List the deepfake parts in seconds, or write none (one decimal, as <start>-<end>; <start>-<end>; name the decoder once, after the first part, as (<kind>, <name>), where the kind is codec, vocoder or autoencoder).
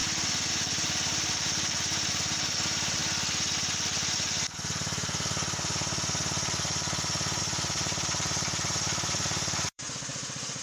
0.5-3.0 (vocoder, BigVGAN v2); 7.4-10.6